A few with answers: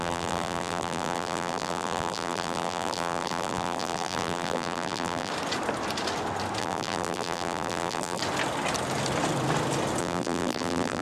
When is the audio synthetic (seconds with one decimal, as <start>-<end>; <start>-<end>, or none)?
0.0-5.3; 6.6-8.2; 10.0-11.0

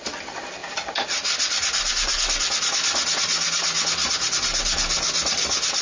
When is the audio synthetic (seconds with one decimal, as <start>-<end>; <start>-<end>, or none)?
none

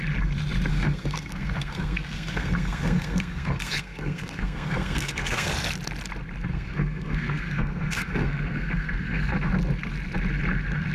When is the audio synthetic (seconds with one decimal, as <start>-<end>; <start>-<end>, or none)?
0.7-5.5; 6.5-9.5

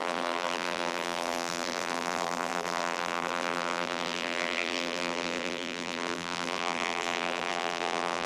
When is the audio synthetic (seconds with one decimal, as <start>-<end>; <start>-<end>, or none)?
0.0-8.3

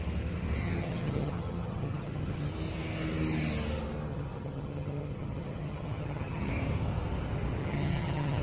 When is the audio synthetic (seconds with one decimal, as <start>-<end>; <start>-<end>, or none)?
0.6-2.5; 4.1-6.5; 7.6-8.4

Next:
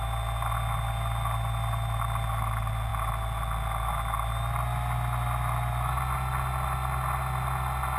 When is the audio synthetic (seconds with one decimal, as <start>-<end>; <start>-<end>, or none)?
none

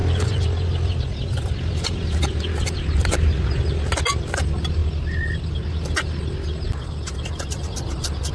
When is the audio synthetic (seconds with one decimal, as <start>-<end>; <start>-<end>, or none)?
none